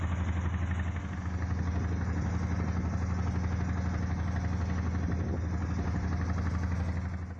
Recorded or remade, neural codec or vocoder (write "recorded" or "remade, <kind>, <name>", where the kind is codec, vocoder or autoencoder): recorded